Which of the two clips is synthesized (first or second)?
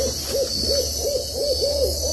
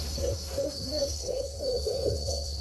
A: second